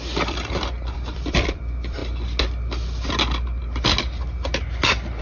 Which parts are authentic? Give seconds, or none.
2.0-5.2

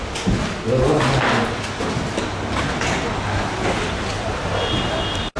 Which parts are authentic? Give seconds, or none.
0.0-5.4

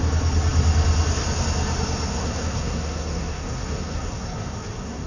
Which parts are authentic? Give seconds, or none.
0.0-2.1

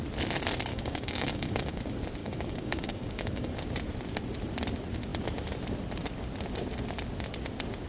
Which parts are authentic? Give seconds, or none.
0.0-0.7; 1.8-2.2; 3.5-7.9

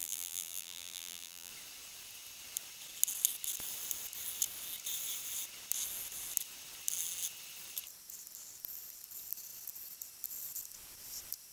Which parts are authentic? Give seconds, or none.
1.5-11.5

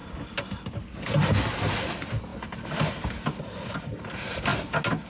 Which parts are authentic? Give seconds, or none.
0.0-1.9; 2.3-3.4; 4.5-5.1